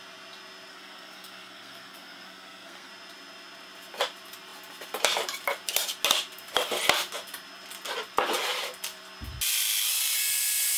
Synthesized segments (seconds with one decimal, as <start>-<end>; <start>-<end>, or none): 0.7-2.9